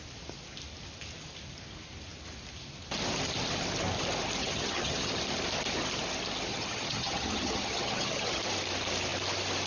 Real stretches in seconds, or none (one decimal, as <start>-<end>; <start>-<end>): 0.0-4.4; 5.1-6.5; 8.4-9.7